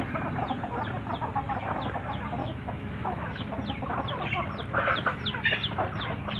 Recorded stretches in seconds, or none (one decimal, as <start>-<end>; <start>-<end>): 0.0-2.4; 3.5-6.4